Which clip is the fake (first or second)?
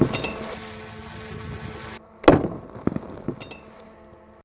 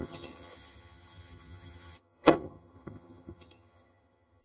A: second